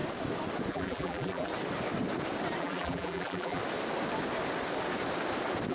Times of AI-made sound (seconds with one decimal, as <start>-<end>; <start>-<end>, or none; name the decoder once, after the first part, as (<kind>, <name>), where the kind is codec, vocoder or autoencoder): 0.7-1.5 (vocoder, BigVGAN v2); 2.6-3.6